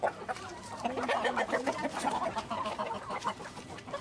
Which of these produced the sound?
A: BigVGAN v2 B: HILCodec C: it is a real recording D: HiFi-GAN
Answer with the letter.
A